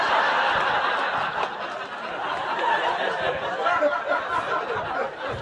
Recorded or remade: recorded